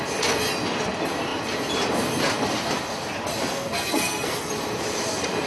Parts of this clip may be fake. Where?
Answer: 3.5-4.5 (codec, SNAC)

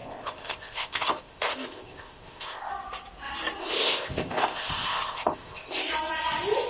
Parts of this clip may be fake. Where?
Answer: 0.0-2.7 (codec, ZipCodec); 3.6-5.9